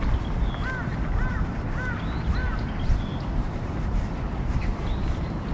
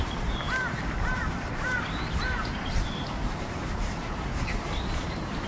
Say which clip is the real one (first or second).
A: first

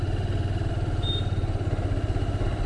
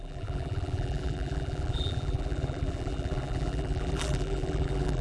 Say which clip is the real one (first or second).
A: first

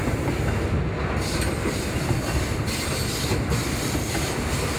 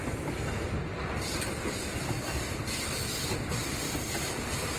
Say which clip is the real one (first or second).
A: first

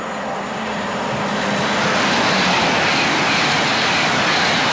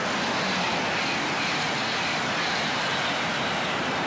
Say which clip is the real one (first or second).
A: second